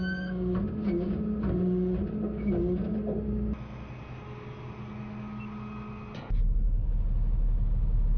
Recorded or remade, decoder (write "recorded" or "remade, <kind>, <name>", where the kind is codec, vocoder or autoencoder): recorded